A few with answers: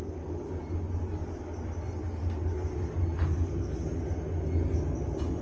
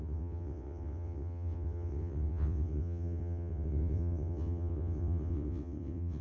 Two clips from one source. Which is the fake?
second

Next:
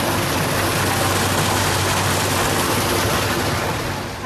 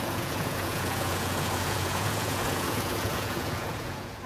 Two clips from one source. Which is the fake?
second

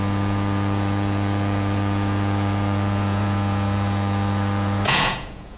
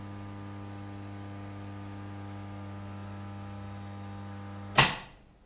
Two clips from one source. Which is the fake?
first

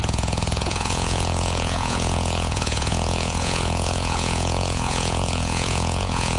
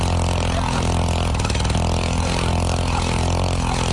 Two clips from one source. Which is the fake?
first